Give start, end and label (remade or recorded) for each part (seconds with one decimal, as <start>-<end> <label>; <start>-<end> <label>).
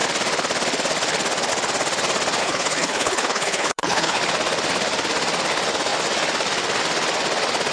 0.0-2.4 recorded; 2.4-4.2 remade; 4.2-7.7 recorded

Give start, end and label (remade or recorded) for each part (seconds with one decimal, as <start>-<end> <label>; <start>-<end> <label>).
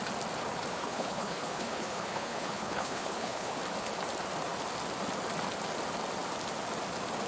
0.0-0.7 recorded; 0.7-3.6 remade; 3.6-7.3 recorded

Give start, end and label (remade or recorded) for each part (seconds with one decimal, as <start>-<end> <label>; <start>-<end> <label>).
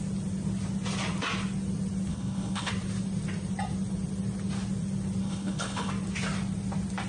0.0-2.1 recorded; 2.1-2.7 remade; 2.7-5.2 recorded; 5.2-5.9 remade; 5.9-7.1 recorded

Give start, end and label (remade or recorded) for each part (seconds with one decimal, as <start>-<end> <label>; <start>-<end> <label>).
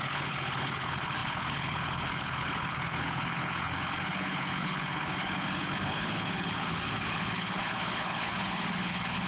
0.0-9.3 remade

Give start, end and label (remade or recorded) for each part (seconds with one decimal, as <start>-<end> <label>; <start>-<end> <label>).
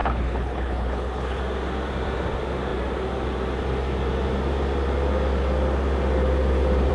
0.0-1.4 remade; 1.4-6.9 recorded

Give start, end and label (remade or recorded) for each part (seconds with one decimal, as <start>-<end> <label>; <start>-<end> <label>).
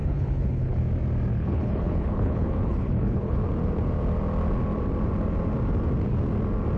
0.0-0.8 remade; 0.8-1.3 recorded; 1.3-3.4 remade; 3.4-6.8 recorded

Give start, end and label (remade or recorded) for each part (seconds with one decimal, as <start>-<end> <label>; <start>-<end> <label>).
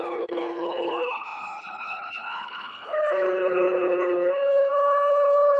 0.0-5.6 remade